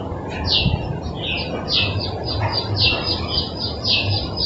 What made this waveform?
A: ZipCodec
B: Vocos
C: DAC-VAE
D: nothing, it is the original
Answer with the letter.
B